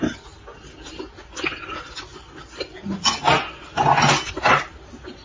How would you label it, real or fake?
real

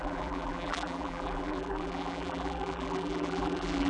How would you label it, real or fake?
fake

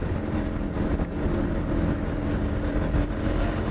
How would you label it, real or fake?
real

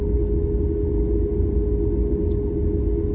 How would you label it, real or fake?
real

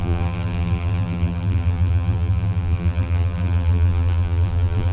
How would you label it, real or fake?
fake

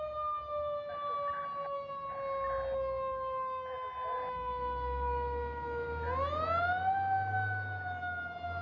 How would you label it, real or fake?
real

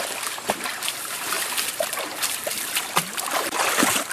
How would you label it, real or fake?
fake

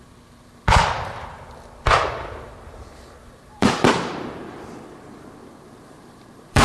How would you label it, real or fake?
fake